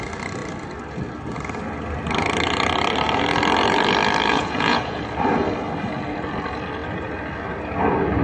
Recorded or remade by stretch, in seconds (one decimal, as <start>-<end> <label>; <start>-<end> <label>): 0.0-4.3 recorded; 4.3-5.0 remade; 5.0-8.2 recorded